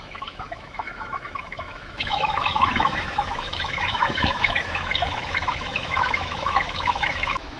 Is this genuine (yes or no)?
no